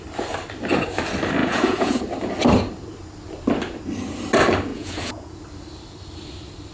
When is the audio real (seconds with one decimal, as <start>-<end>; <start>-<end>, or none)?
0.0-1.4; 2.0-4.7; 5.4-6.7